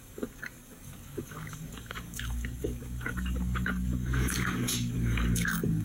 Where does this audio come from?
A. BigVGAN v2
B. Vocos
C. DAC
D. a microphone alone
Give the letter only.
C